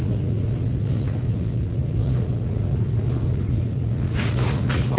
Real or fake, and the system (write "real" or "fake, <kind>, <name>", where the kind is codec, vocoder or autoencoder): fake, vocoder, Vocos